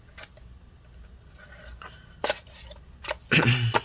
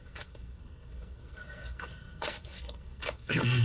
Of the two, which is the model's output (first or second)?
second